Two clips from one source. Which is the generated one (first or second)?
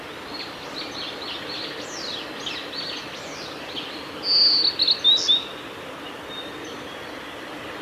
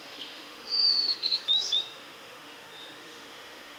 second